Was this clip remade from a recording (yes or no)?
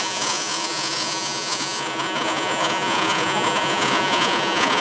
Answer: yes